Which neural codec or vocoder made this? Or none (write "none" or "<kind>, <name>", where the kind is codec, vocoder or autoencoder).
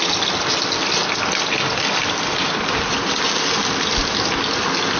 none